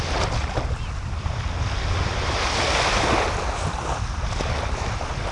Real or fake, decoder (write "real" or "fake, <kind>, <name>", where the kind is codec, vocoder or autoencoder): real